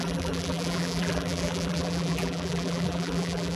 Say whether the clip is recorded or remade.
remade